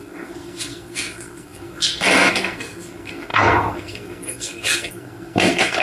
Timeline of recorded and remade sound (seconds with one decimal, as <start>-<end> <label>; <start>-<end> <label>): 0.0-5.8 remade